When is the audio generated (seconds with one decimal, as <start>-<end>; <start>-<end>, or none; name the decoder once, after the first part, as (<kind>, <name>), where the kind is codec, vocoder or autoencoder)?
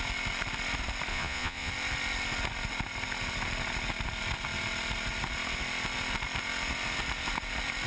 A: 1.1-1.7 (vocoder, Vocos)